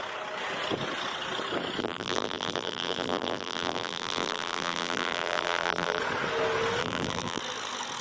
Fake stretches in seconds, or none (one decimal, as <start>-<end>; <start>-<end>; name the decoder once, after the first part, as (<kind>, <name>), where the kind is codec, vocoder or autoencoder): 1.8-6.0 (vocoder, BigVGAN v2); 6.8-7.4